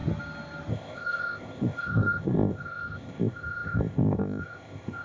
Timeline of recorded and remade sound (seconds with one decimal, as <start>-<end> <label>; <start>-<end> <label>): 0.0-0.7 recorded; 0.7-5.0 remade